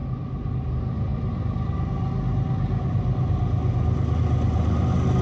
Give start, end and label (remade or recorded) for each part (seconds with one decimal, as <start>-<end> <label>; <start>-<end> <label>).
0.0-5.2 recorded